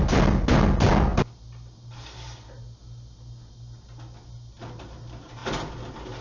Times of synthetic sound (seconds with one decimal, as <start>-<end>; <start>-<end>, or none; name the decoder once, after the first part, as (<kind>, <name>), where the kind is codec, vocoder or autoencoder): none